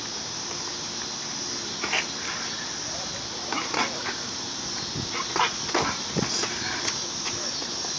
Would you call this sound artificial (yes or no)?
no